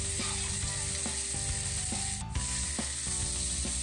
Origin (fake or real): real